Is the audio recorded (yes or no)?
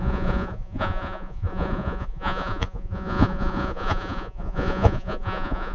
no